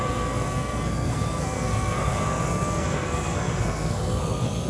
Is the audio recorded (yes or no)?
no